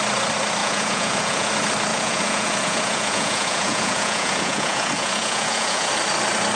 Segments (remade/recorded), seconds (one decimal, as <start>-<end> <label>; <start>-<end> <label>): 0.0-0.6 recorded; 0.6-1.5 remade; 1.5-1.9 recorded; 1.9-5.9 remade; 5.9-6.6 recorded